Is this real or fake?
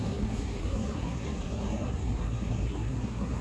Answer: fake